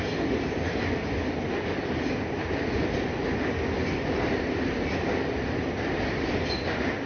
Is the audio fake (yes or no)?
no